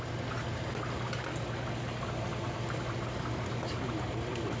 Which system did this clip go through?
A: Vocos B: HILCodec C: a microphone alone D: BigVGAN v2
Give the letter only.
C